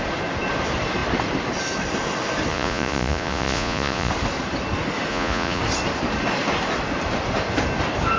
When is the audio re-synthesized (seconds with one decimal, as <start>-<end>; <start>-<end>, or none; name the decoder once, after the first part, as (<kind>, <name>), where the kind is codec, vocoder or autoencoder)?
2.5-4.1 (vocoder, Vocos); 5.1-5.6

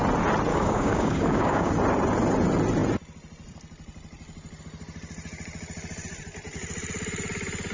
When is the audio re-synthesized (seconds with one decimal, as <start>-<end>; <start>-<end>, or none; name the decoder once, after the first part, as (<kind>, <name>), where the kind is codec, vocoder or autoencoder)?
0.5-1.7 (codec, DAC)

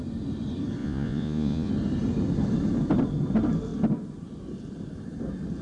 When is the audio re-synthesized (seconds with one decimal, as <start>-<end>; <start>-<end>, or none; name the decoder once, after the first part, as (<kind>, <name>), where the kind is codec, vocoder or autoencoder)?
0.8-1.7 (vocoder, Vocos)

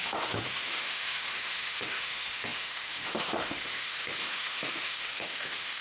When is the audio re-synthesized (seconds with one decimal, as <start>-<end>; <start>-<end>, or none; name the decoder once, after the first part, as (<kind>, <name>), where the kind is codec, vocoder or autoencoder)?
0.0-5.8 (autoencoder, DAC-VAE)